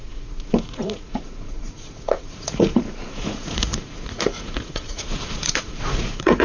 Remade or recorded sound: remade